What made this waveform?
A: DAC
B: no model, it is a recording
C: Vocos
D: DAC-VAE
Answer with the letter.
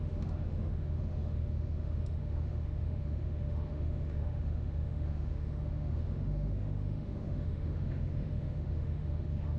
D